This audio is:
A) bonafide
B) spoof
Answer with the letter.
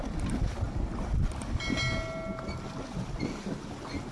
A